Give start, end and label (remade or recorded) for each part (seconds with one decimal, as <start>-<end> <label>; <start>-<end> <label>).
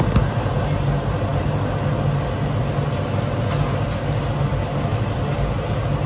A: 0.0-6.1 recorded